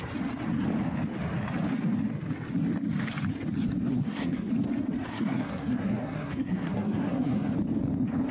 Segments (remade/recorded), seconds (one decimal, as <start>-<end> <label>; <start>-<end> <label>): 0.0-3.9 recorded; 3.9-4.5 remade; 4.5-5.1 recorded; 5.1-7.5 remade; 7.5-8.3 recorded